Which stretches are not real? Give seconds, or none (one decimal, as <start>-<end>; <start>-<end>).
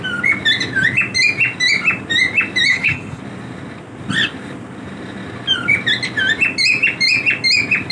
2.7-3.2